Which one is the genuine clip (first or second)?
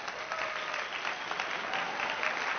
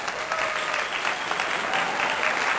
second